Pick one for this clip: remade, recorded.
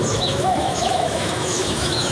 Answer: remade